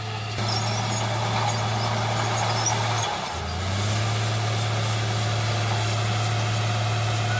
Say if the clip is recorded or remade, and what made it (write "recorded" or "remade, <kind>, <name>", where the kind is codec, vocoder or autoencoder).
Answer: recorded